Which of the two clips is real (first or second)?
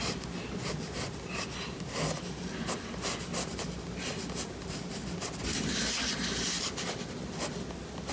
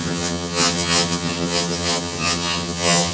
first